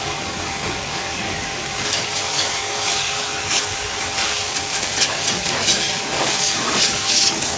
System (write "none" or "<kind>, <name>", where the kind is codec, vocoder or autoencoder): codec, DAC